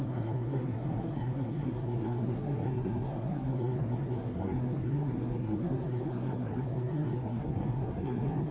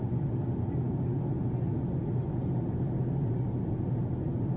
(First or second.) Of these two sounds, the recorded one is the second